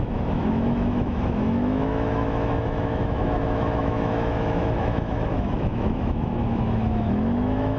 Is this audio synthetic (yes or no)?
yes